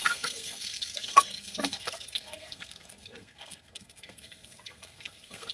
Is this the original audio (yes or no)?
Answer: no